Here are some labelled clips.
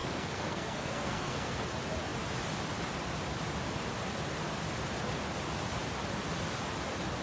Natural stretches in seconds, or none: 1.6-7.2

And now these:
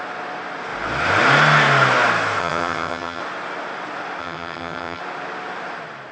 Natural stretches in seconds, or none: 0.0-2.4; 3.2-4.2; 5.0-6.1

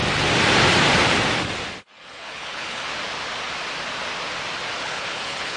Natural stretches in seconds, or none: 0.0-1.8; 2.9-4.8

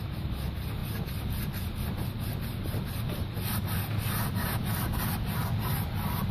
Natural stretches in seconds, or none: 0.0-6.3

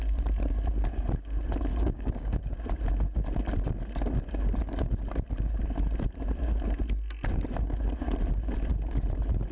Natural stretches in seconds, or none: 0.0-1.7; 2.4-9.5

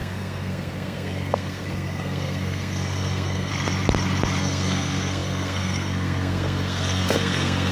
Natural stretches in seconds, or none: 3.5-4.4

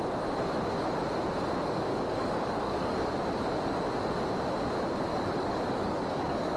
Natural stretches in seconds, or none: 0.0-1.9; 3.1-5.1